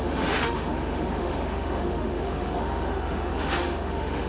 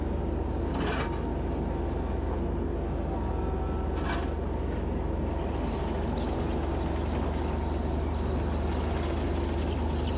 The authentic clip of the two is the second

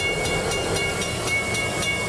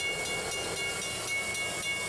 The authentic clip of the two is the second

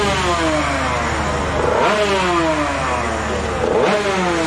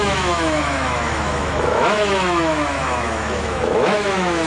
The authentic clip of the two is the first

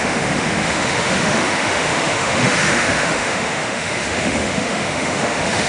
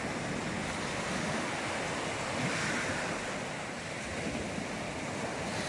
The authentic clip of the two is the second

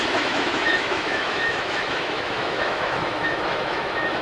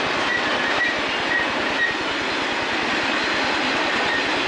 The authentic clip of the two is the second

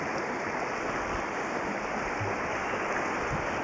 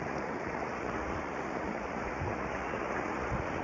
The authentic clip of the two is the first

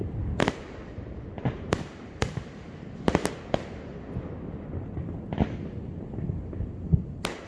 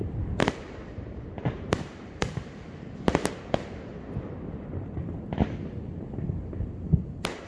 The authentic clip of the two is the first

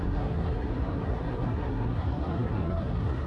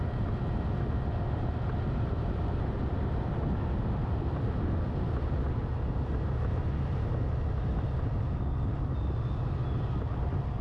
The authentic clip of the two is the second